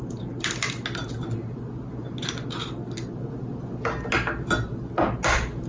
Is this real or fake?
real